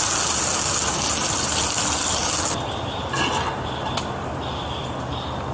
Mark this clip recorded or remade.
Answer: recorded